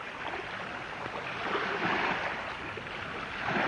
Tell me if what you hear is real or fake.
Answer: real